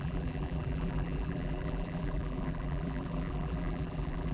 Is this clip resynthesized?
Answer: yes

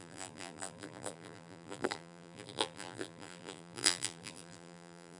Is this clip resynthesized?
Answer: yes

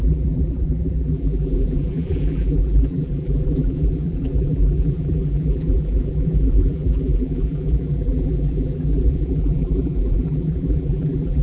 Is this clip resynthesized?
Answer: yes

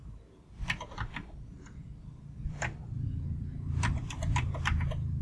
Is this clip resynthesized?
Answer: yes